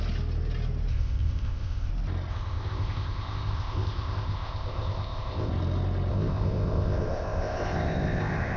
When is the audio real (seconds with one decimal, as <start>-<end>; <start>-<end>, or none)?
0.0-0.9; 1.9-2.3; 5.5-6.1